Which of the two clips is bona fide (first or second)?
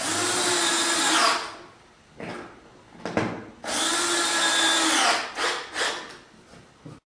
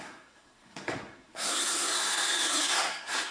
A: first